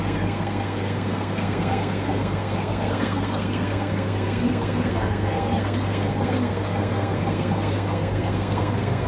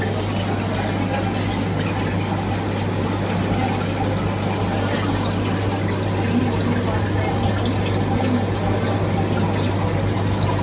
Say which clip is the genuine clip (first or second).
second